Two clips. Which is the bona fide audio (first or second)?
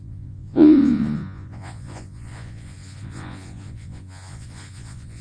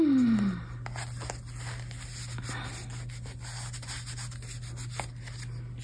second